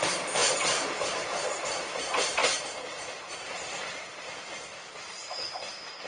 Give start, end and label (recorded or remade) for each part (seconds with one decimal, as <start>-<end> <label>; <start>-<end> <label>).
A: 0.0-6.1 recorded